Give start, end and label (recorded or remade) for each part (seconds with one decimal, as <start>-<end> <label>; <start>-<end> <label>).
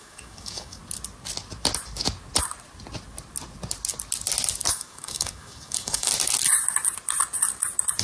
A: 0.0-0.8 remade; 0.8-4.7 recorded; 4.7-6.1 remade; 6.1-8.0 recorded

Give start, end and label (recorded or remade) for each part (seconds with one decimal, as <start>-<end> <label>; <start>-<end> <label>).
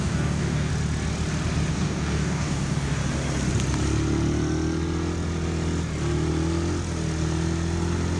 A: 0.0-0.7 remade; 0.7-1.7 recorded; 1.7-3.0 remade; 3.0-8.2 recorded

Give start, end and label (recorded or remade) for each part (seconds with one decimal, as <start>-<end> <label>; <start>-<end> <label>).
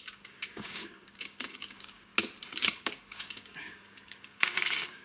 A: 0.0-2.1 remade; 2.1-2.7 recorded; 2.7-5.0 remade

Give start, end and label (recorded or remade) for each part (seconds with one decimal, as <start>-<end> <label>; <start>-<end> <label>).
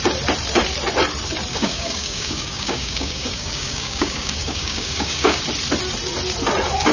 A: 0.0-1.5 recorded; 1.5-5.4 remade; 5.4-6.9 recorded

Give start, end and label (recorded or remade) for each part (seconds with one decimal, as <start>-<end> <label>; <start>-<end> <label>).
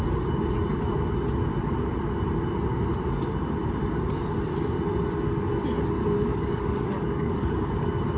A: 0.0-6.3 recorded; 6.3-7.7 remade; 7.7-8.2 recorded